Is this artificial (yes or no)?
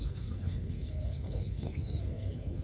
yes